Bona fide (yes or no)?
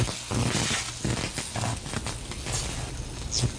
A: yes